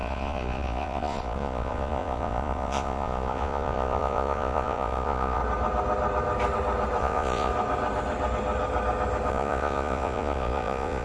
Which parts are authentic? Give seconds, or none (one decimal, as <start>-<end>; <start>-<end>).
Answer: 5.4-7.0; 7.5-9.3